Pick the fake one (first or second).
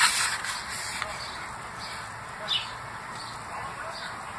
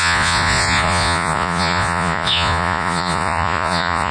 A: second